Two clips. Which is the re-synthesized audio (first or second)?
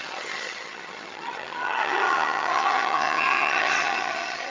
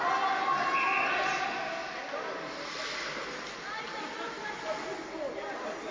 first